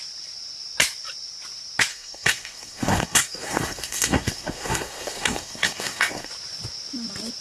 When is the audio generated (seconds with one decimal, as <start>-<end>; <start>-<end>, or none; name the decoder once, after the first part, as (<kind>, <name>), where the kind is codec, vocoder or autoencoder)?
1.9-6.3 (codec, SNAC)